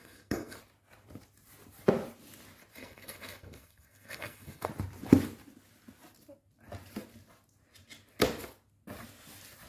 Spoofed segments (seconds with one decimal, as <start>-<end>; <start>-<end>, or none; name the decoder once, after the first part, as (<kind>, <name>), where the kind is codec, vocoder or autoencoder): 0.0-0.6 (codec, SNAC); 2.7-4.7